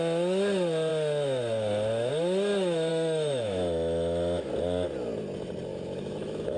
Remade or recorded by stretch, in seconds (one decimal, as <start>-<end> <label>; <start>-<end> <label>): 0.0-2.9 recorded; 2.9-4.5 remade; 4.5-5.7 recorded; 5.7-6.6 remade